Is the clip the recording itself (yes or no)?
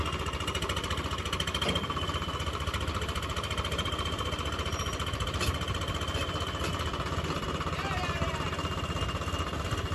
yes